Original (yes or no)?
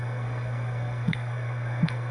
no